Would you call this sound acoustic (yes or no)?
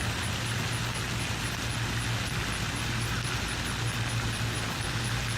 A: yes